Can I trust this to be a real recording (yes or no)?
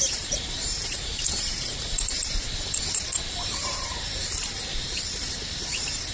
no